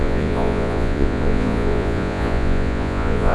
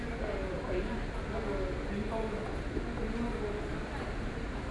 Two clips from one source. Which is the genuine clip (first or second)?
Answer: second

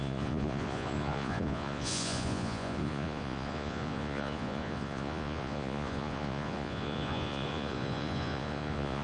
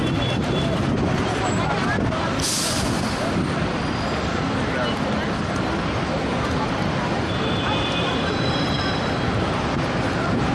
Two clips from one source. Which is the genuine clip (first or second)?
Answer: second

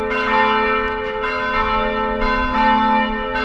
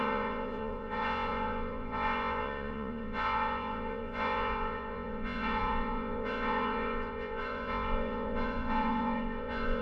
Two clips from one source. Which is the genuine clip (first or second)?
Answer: first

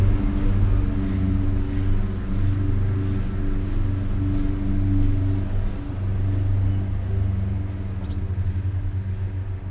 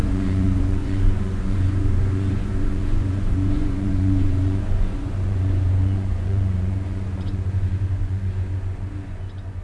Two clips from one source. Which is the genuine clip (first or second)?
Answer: first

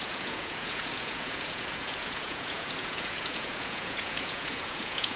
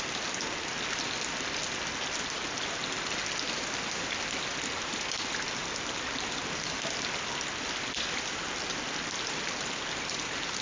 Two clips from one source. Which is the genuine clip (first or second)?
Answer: second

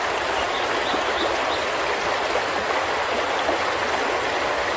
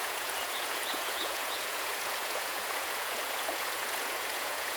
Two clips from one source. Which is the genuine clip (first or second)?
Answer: first